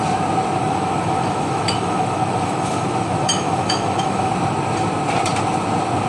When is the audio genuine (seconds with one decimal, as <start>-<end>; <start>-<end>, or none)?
0.0-0.6; 4.3-6.1